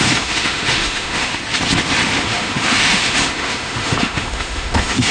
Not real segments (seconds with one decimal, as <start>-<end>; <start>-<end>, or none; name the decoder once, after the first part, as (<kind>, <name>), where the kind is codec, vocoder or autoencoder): 0.0-1.4 (autoencoder, DAC-VAE); 2.2-5.1

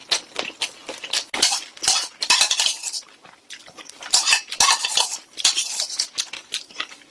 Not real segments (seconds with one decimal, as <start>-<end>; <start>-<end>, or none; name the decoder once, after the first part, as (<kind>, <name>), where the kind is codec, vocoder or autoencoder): none

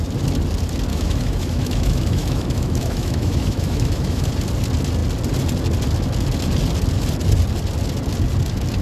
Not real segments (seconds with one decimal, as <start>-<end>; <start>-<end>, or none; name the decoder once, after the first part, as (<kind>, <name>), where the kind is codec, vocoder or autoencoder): 0.9-4.3 (autoencoder, DAC-VAE)